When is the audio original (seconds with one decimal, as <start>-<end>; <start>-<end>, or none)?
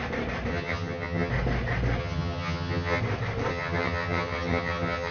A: 0.0-0.5; 1.3-2.0; 3.0-3.5